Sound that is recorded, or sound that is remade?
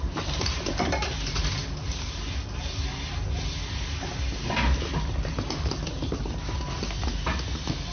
recorded